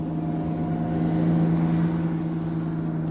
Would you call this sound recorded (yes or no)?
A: yes